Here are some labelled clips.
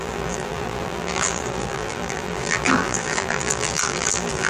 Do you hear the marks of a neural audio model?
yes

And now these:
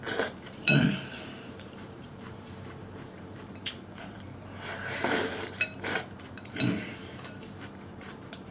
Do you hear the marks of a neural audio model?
yes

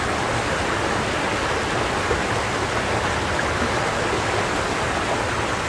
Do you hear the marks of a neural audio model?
no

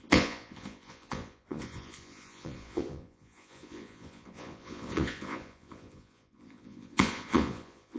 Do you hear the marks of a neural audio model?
yes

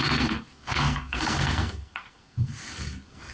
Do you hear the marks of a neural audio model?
yes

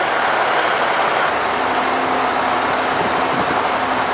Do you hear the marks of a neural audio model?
no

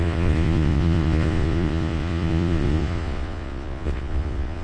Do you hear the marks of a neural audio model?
yes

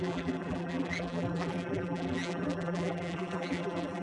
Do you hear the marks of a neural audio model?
yes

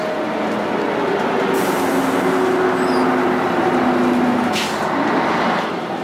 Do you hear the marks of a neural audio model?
no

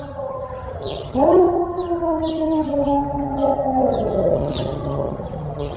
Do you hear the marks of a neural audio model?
yes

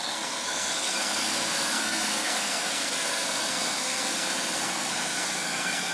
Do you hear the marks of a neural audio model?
yes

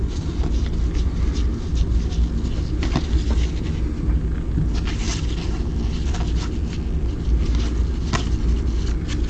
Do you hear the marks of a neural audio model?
no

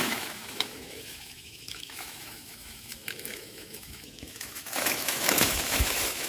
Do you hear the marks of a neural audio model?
yes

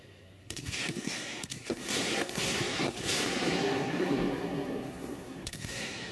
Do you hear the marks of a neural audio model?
yes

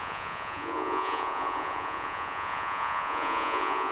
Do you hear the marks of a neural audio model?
yes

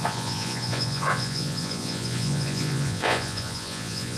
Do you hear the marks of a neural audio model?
yes